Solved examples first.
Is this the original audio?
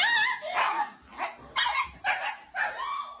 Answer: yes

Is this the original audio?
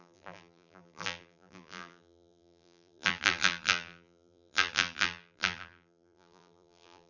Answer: no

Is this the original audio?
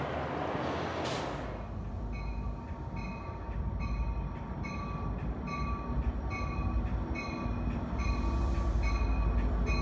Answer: yes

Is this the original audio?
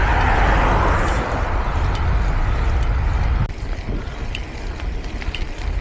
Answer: yes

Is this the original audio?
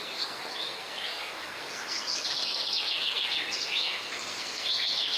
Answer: no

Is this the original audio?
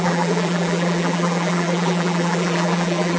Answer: no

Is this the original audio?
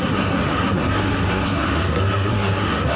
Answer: no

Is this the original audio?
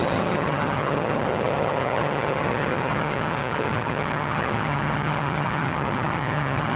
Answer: no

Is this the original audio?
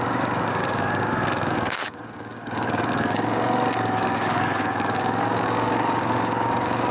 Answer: no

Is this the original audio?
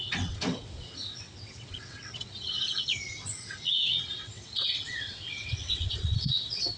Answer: no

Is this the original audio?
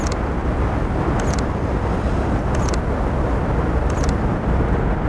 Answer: yes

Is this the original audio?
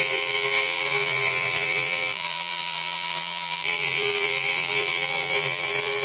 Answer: no